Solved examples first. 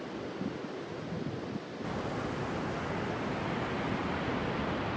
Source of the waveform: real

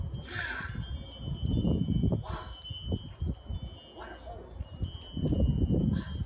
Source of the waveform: real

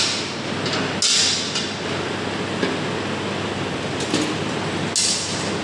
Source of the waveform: real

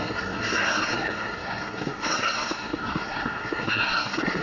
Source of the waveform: fake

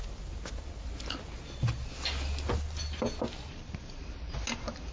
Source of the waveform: real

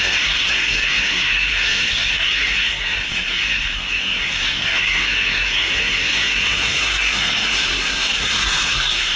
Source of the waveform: fake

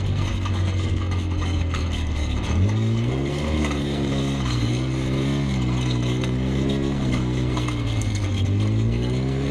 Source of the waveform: fake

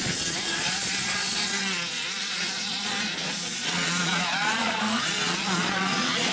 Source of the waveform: fake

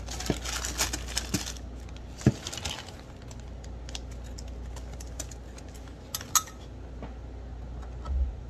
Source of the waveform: real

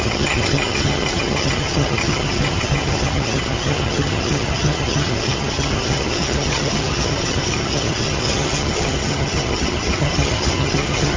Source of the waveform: fake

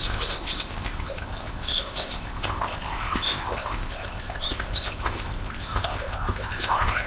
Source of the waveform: fake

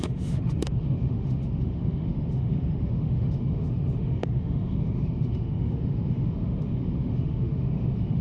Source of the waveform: fake